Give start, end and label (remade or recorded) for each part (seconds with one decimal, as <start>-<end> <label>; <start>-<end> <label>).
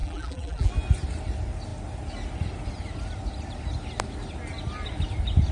0.0-0.7 remade; 0.7-5.5 recorded